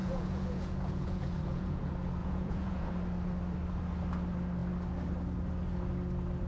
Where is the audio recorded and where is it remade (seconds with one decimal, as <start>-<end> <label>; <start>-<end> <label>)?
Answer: 0.0-1.8 remade; 1.8-2.2 recorded; 2.2-2.9 remade; 2.9-6.5 recorded